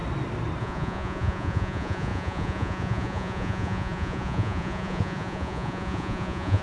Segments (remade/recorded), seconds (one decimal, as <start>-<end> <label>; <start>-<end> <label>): 0.0-0.6 recorded; 0.6-6.6 remade